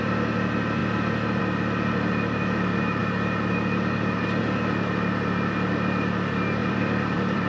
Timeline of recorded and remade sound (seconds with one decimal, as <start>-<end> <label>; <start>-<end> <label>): 0.0-6.6 recorded; 6.6-7.5 remade